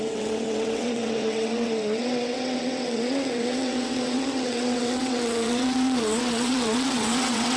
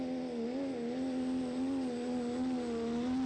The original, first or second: second